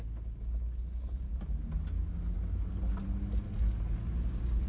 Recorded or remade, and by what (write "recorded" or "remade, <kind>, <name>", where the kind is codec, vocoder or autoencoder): recorded